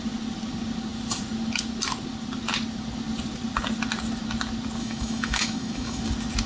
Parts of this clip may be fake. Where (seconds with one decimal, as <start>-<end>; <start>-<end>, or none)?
4.8-6.0